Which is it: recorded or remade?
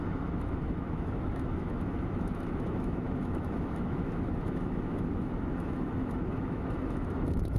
remade